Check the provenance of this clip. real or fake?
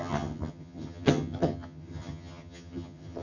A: fake